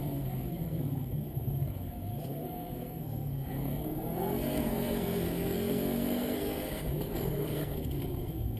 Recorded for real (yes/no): no